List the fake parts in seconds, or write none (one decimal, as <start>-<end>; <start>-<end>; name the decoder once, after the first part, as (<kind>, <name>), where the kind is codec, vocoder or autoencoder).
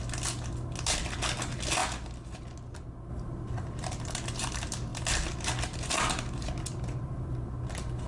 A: none